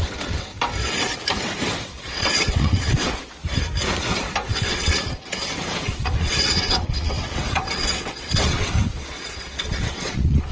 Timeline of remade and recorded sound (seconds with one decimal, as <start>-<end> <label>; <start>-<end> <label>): 0.0-0.5 remade; 0.5-1.7 recorded; 1.7-3.4 remade; 3.4-4.5 recorded; 4.5-10.5 remade